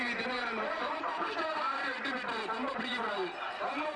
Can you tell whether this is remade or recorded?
recorded